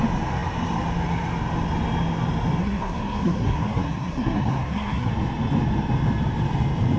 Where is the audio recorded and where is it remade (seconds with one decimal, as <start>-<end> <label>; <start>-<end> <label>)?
0.0-2.6 recorded; 2.6-5.1 remade; 5.1-7.0 recorded